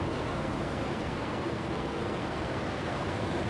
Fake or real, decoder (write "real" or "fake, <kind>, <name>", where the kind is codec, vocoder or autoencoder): fake, codec, SNAC